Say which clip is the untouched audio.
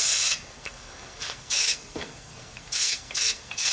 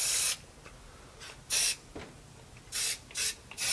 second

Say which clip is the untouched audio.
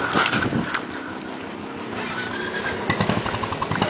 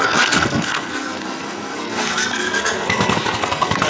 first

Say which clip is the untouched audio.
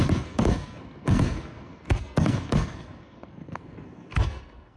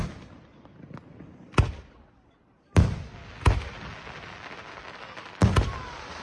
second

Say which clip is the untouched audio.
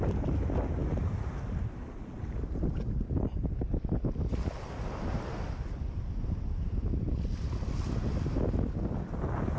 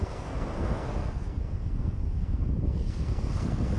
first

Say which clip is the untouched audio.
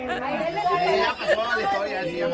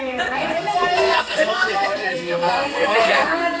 first